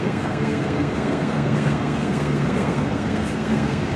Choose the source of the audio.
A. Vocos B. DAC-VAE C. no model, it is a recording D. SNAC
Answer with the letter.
D